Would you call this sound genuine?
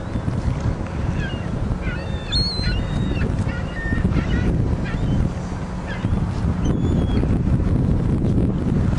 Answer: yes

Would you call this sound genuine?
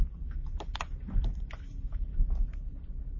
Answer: no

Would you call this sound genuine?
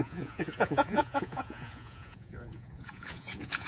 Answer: no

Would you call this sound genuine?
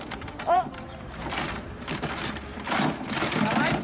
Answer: no